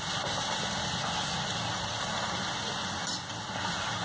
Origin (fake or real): real